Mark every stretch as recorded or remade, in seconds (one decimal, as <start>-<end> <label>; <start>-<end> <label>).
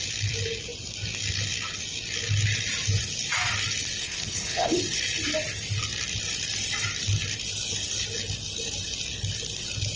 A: 0.0-4.0 recorded; 4.0-4.8 remade; 4.8-10.0 recorded